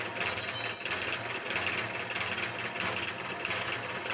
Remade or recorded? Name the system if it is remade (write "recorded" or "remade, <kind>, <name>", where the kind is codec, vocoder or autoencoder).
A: recorded